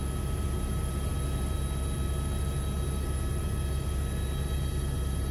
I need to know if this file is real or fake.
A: real